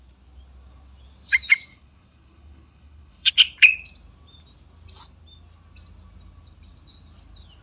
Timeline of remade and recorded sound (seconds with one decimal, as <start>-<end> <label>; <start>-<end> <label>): 0.0-1.7 recorded; 1.7-3.3 remade; 3.3-7.6 recorded